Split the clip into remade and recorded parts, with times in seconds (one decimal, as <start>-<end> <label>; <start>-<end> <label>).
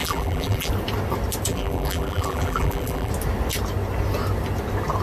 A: 0.0-0.7 remade; 0.7-1.5 recorded; 1.5-3.1 remade; 3.1-5.0 recorded